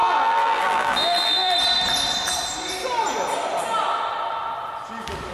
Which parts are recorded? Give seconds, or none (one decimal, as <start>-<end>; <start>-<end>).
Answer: 1.5-5.3